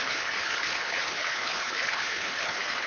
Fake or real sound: fake